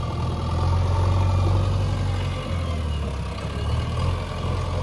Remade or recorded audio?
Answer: recorded